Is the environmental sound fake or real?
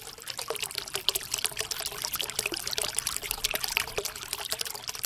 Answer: fake